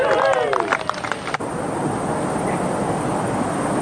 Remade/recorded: recorded